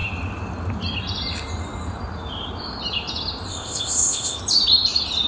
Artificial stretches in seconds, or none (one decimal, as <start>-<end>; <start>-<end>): 3.5-4.4